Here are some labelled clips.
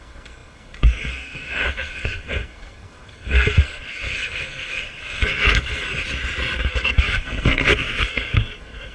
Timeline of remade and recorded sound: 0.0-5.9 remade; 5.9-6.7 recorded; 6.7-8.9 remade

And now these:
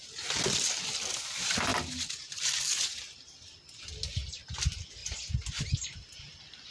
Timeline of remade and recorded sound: 0.0-6.7 recorded

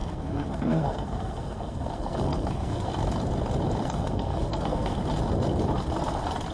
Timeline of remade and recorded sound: 0.0-2.9 remade; 2.9-3.8 recorded; 3.8-5.0 remade; 5.0-6.5 recorded

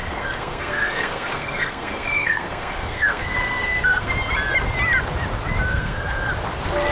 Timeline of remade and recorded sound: 0.0-4.1 remade; 4.1-5.7 recorded; 5.7-6.3 remade; 6.3-6.9 recorded

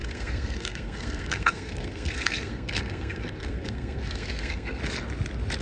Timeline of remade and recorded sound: 0.0-4.8 remade; 4.8-5.6 recorded

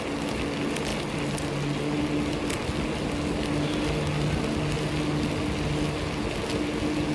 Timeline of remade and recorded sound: 0.0-7.1 recorded

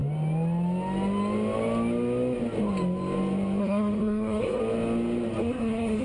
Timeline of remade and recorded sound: 0.0-3.6 recorded; 3.6-4.6 remade; 4.6-5.4 recorded; 5.4-6.0 remade